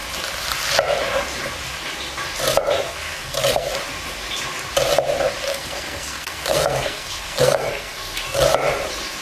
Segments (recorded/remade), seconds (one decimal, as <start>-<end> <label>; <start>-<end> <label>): 0.0-2.9 recorded; 2.9-3.7 remade; 3.7-5.5 recorded; 5.5-8.4 remade; 8.4-9.2 recorded